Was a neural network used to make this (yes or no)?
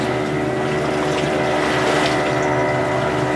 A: no